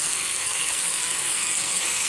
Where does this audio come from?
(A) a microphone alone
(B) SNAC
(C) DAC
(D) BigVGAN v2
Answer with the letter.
B